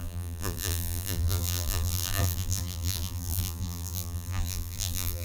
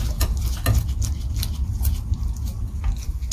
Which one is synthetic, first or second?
first